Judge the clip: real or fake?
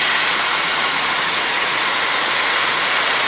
fake